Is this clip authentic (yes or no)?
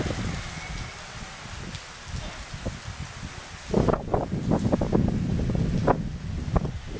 yes